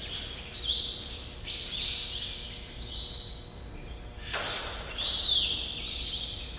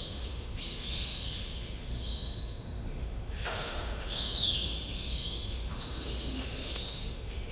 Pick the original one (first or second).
first